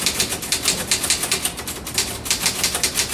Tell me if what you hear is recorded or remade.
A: recorded